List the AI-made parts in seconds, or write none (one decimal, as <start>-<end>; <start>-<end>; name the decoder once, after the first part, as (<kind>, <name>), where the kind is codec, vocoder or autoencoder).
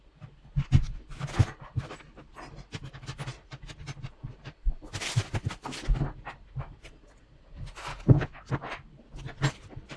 7.9-8.5 (codec, HILCodec)